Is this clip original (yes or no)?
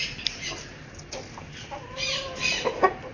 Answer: yes